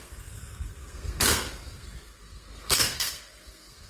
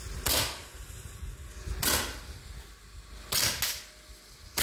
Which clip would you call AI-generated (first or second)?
first